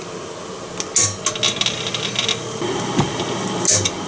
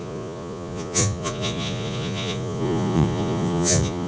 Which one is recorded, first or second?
first